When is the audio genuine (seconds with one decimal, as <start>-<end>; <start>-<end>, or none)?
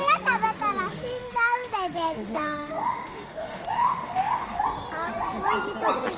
0.0-0.9; 4.6-6.2